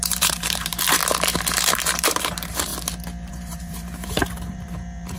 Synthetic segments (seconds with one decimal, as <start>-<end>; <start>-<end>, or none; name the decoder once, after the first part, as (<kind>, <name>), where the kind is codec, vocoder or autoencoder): 0.0-1.0 (vocoder, BigVGAN v2); 1.6-2.7; 3.3-5.2